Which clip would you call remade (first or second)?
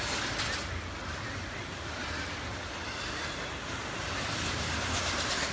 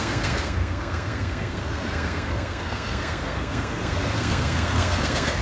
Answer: second